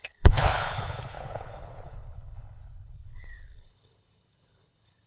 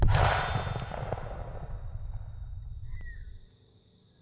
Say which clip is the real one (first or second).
second